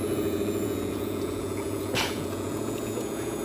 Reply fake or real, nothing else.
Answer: fake